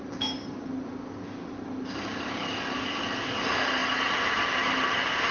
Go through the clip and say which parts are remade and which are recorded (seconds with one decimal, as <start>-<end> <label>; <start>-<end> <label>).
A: 0.0-5.3 recorded